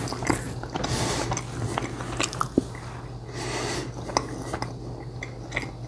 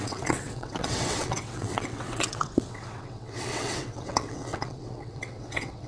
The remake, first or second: second